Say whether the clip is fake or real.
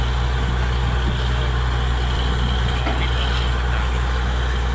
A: real